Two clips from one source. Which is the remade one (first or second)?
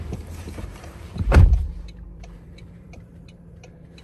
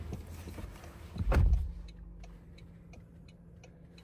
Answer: first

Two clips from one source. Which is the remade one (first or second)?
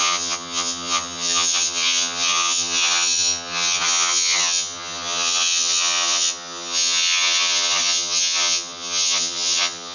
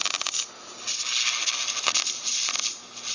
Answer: first